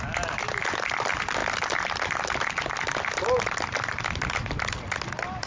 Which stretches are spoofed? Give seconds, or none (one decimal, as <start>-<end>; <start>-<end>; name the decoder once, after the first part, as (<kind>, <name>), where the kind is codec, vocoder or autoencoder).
none